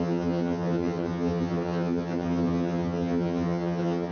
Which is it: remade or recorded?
remade